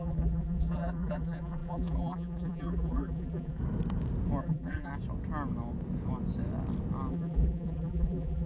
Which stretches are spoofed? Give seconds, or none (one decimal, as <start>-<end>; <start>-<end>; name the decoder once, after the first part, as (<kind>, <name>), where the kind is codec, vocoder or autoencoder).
0.0-3.6 (vocoder, BigVGAN v2); 4.4-4.9; 7.1-8.5

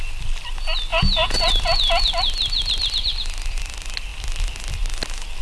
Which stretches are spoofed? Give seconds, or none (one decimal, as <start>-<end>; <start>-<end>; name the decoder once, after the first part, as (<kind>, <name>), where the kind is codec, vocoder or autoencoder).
0.9-2.1 (vocoder, Vocos)

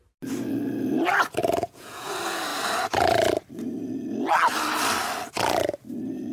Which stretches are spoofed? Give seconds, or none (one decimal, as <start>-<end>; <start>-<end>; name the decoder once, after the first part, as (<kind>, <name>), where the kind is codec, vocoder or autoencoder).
1.4-2.1 (vocoder, Vocos)

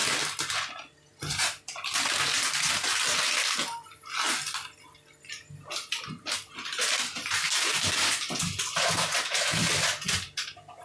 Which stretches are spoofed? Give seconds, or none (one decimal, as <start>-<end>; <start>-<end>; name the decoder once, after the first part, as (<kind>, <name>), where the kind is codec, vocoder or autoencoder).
none

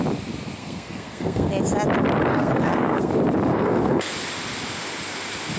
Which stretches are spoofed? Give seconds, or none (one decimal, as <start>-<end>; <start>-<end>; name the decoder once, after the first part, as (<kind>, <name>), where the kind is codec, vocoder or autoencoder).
0.6-1.5 (codec, SNAC); 2.3-3.1; 3.5-4.1

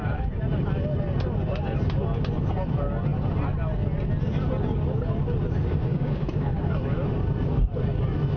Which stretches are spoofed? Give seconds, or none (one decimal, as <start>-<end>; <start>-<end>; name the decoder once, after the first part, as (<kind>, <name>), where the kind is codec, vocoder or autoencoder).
5.8-6.7 (codec, DAC)

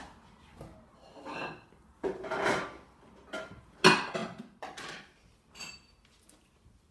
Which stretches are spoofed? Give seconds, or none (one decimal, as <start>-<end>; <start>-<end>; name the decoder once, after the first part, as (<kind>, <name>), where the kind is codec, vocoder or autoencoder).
none

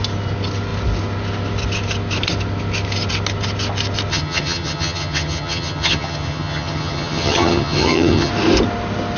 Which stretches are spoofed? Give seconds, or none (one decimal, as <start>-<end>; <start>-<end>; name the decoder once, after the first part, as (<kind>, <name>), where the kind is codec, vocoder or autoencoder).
4.1-8.3 (vocoder, HiFi-GAN)